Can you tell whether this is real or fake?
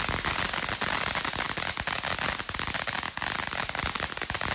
real